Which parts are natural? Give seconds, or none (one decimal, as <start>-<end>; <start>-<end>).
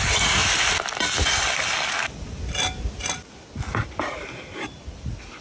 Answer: 0.0-5.4